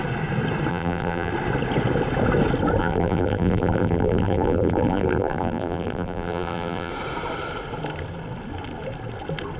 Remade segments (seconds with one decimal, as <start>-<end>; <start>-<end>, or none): 0.7-1.3; 2.8-6.9